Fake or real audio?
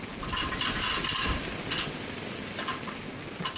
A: real